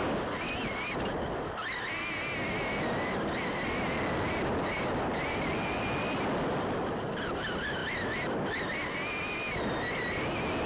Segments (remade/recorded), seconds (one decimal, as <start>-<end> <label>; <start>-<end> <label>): 0.0-10.7 recorded